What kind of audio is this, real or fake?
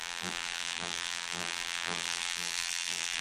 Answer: fake